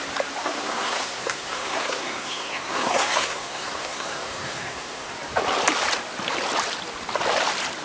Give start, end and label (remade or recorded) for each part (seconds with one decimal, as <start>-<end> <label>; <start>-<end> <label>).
0.0-0.4 recorded; 0.4-5.1 remade; 5.1-7.8 recorded